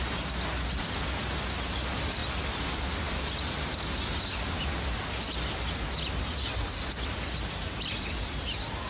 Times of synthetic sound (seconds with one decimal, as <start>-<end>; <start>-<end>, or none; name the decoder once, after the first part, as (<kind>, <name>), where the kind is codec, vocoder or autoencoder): none

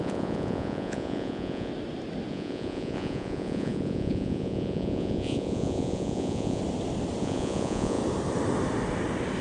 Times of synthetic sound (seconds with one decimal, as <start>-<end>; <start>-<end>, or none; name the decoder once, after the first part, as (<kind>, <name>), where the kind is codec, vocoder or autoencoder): 0.0-1.7 (vocoder, Vocos); 2.3-6.6; 7.2-8.0